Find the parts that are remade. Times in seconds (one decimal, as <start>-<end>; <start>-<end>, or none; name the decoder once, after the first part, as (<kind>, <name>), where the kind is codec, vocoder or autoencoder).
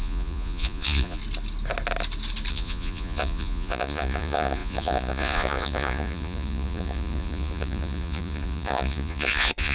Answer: 0.0-1.2 (vocoder, Vocos); 2.5-9.7